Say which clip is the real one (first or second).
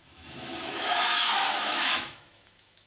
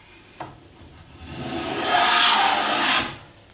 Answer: second